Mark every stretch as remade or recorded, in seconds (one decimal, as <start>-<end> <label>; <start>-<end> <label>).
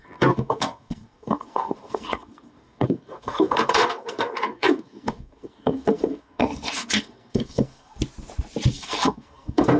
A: 0.0-8.0 remade; 8.0-8.7 recorded; 8.7-9.8 remade